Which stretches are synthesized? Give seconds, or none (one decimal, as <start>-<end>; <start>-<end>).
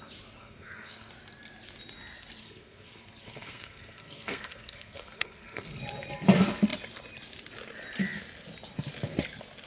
0.4-1.1; 2.4-5.8